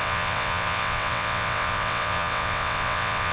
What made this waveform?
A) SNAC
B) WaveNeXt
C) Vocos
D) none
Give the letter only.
B